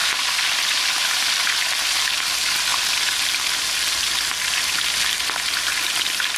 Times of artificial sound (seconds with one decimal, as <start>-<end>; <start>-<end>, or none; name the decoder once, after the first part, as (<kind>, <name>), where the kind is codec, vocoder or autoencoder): none